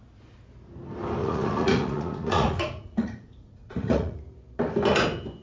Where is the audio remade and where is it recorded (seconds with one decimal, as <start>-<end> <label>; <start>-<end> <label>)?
0.0-1.2 recorded; 1.2-4.2 remade; 4.2-5.4 recorded